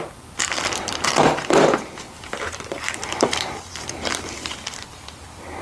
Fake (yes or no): yes